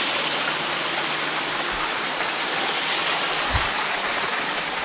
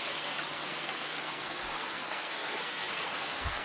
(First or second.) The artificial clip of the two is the second